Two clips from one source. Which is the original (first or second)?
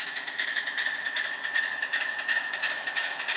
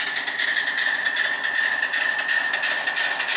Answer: second